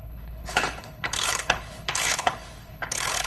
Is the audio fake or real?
fake